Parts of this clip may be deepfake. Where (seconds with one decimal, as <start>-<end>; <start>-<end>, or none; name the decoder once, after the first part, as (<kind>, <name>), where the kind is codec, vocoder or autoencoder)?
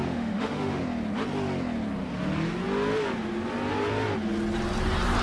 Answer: 0.0-0.8 (autoencoder, DAC-VAE)